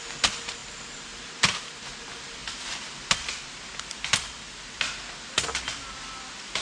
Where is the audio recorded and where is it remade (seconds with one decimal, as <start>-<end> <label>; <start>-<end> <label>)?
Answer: 0.0-6.6 recorded